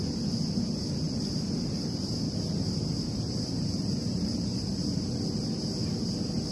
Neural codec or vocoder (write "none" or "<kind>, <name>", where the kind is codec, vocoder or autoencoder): vocoder, BigVGAN v2